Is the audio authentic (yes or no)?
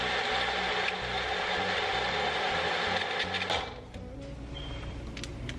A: yes